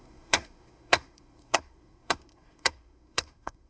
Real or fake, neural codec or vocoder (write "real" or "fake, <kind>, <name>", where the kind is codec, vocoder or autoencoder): fake, codec, SNAC